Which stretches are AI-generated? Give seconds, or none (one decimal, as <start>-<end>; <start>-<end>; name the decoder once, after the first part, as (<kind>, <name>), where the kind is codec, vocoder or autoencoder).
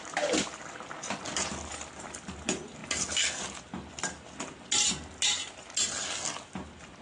none